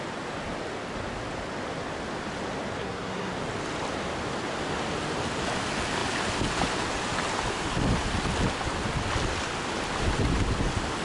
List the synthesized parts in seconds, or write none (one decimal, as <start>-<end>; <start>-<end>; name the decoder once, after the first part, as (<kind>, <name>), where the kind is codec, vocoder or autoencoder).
2.8-3.3 (codec, SNAC)